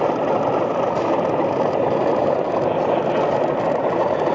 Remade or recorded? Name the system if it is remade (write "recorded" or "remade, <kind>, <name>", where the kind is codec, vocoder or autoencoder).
recorded